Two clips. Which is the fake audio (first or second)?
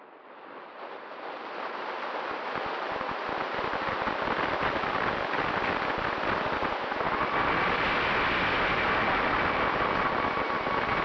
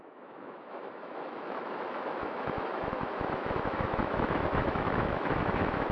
second